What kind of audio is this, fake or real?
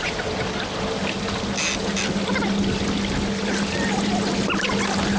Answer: real